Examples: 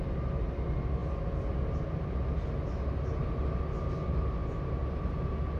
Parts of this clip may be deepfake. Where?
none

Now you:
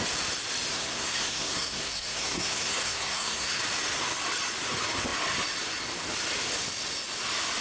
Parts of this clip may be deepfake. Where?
0.7-3.6 (codec, SNAC)

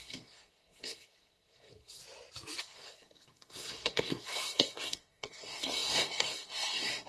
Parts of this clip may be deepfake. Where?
0.0-2.0 (codec, SNAC); 2.6-7.1

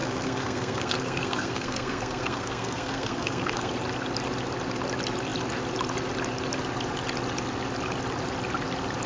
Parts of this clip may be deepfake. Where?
0.0-3.7 (codec, SNAC)